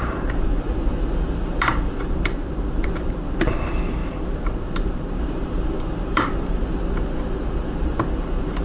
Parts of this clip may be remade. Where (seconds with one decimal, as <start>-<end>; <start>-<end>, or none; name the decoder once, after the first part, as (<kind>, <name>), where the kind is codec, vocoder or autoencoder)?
0.0-0.9 (vocoder, BigVGAN v2); 1.6-6.6; 7.8-8.6